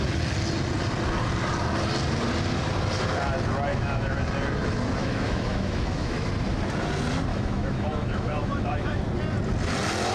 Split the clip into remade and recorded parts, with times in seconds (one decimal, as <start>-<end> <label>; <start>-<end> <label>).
0.0-3.7 recorded; 3.7-4.2 remade; 4.2-5.0 recorded; 5.0-6.3 remade; 6.3-7.3 recorded; 7.3-9.0 remade; 9.0-10.1 recorded